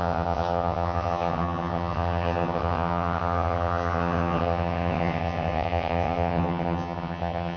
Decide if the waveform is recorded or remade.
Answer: remade